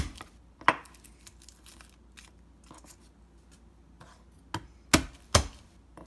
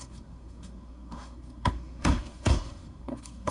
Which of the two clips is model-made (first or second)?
second